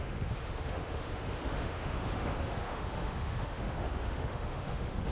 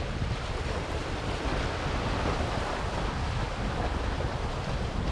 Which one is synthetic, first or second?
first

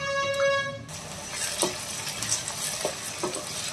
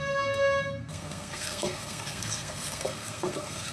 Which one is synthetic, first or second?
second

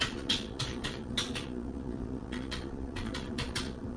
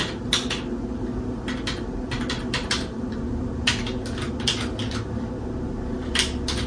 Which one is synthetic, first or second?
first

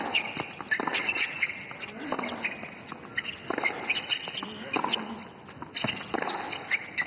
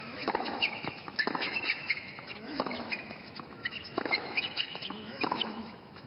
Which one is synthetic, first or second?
second